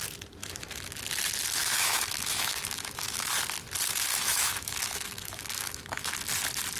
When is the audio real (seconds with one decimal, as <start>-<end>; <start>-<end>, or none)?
0.0-0.4; 1.0-1.6; 3.3-4.1; 6.1-6.8